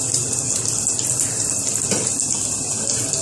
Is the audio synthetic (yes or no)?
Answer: no